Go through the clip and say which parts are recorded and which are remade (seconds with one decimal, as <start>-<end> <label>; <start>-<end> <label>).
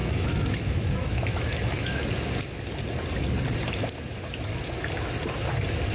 0.0-2.0 remade; 2.0-5.9 recorded